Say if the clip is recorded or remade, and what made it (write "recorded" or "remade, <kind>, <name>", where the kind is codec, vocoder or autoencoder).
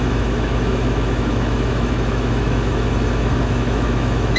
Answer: remade, autoencoder, DAC-VAE